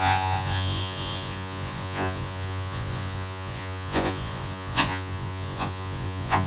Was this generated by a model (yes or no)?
yes